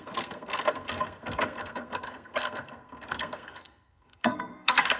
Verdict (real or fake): fake